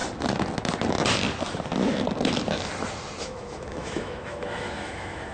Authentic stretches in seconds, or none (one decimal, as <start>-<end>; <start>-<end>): 0.0-3.2